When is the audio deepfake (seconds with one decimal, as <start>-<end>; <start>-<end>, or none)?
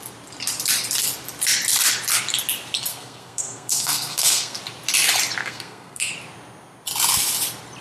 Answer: 2.9-4.6; 5.4-6.1